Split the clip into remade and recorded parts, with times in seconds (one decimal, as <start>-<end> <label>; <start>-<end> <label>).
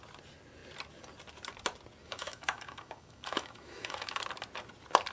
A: 0.0-2.0 recorded; 2.0-4.2 remade; 4.2-5.1 recorded